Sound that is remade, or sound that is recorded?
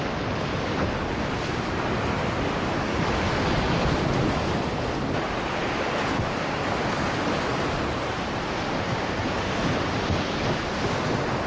recorded